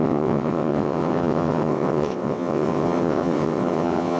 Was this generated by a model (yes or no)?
yes